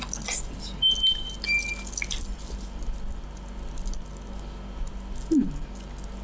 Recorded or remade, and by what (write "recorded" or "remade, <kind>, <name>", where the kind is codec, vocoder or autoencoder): recorded